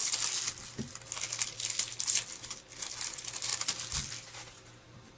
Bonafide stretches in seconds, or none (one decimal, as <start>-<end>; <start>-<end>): 0.0-3.1; 3.5-4.8

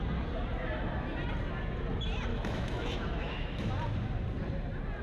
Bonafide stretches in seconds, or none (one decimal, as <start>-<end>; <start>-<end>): 0.0-2.3; 3.7-5.0